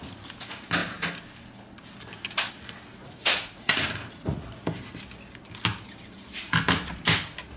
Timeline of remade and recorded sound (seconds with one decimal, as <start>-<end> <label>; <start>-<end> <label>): 0.0-3.0 recorded; 3.0-4.5 remade; 4.5-7.6 recorded